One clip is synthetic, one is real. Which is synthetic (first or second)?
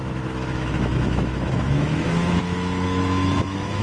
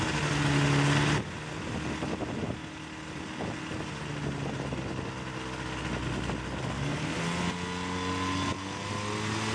first